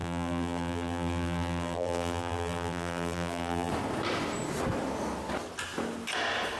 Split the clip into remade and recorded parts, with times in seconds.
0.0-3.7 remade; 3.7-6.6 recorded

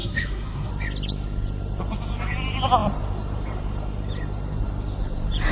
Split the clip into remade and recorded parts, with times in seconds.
0.0-0.7 remade; 0.7-5.5 recorded

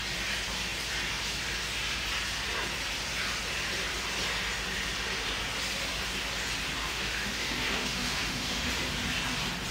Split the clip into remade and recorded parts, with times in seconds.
0.0-6.8 recorded; 6.8-8.7 remade; 8.7-9.7 recorded

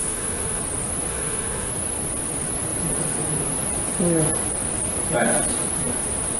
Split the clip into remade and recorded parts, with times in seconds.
0.0-0.6 remade; 0.6-1.1 recorded; 1.1-1.7 remade; 1.7-6.4 recorded

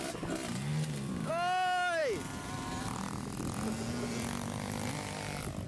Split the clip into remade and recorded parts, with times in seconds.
0.0-5.7 recorded

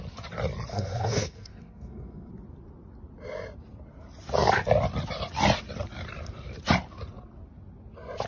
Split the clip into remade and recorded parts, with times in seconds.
0.0-0.7 recorded; 0.7-2.3 remade; 2.3-8.3 recorded

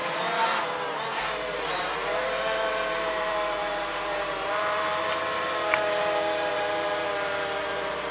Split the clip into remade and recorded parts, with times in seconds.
0.0-8.1 remade

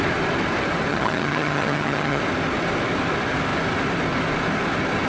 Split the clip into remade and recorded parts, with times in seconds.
0.0-0.9 recorded; 0.9-2.2 remade; 2.2-5.1 recorded